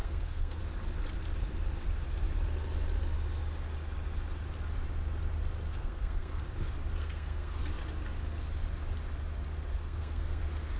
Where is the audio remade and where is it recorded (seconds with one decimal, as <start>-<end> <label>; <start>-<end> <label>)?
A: 0.0-0.6 remade; 0.6-5.7 recorded; 5.7-6.4 remade; 6.4-7.0 recorded; 7.0-7.7 remade; 7.7-9.7 recorded; 9.7-10.4 remade; 10.4-10.8 recorded